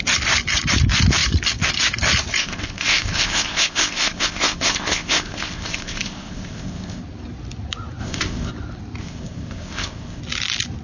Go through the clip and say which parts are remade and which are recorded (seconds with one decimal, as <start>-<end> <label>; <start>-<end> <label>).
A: 0.0-2.4 recorded; 2.4-7.0 remade; 7.0-8.0 recorded; 8.0-8.5 remade; 8.5-9.0 recorded; 9.0-10.2 remade; 10.2-10.8 recorded